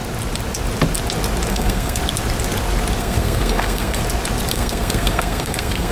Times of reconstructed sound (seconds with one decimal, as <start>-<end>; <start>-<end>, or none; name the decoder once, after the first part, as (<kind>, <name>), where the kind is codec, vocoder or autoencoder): 1.5-2.0 (codec, SNAC); 3.0-4.0; 4.5-5.9